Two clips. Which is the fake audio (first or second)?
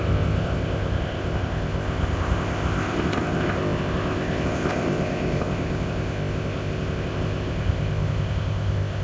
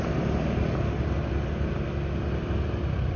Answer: first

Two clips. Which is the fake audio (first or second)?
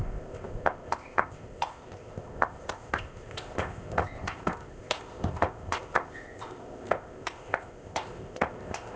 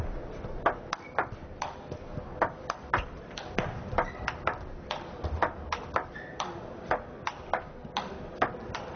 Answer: first